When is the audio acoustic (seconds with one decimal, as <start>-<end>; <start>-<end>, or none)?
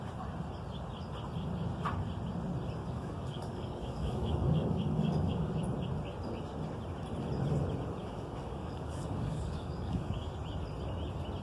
0.0-2.8; 5.5-8.0; 10.3-11.4